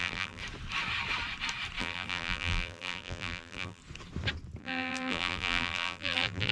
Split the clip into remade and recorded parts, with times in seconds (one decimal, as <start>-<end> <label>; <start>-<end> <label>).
0.0-0.4 remade; 0.4-1.8 recorded; 1.8-3.8 remade; 3.8-4.6 recorded; 4.6-6.5 remade

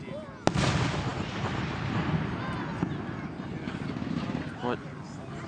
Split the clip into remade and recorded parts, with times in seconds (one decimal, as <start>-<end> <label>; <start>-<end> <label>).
0.0-5.5 recorded

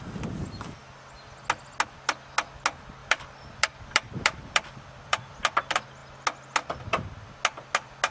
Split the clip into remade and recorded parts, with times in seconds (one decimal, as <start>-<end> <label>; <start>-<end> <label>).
0.0-3.0 recorded; 3.0-5.6 remade; 5.6-8.1 recorded

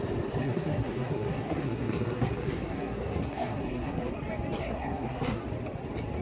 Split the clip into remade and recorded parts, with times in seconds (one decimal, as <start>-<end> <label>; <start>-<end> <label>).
0.0-0.4 recorded; 0.4-4.1 remade; 4.1-4.6 recorded; 4.6-5.4 remade; 5.4-6.2 recorded

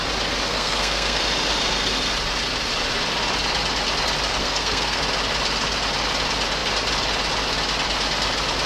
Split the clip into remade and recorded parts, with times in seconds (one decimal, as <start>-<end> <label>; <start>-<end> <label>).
0.0-0.5 recorded; 0.5-1.2 remade; 1.2-4.4 recorded; 4.4-5.0 remade; 5.0-8.7 recorded